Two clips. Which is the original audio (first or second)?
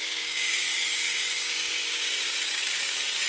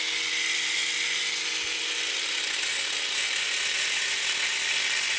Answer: second